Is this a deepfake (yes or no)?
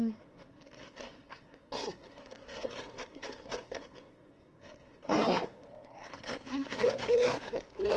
yes